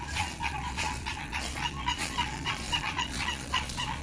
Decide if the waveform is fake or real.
fake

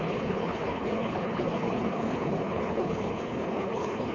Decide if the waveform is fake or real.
fake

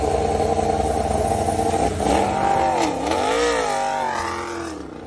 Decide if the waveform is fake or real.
real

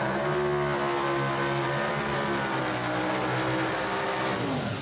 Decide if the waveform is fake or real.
real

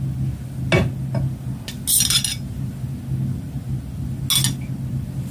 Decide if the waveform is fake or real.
real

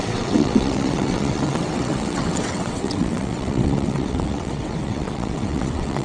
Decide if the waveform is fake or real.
fake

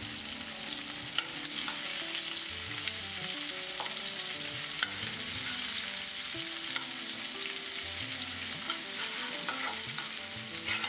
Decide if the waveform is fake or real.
real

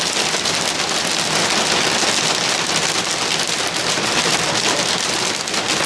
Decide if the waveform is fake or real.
real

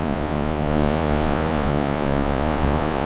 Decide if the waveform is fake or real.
fake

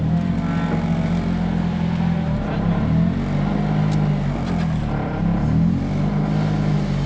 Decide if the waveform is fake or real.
real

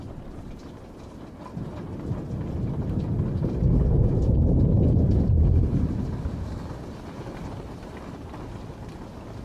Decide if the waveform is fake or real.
real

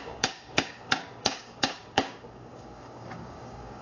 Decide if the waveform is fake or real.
fake